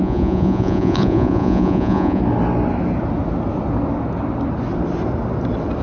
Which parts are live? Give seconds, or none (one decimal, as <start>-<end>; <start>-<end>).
2.2-5.8